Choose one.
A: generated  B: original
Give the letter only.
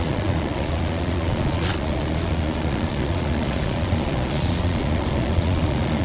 A